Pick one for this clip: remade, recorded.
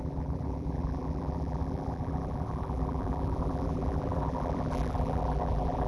remade